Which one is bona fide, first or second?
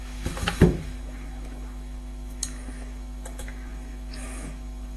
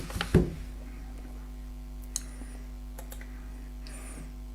second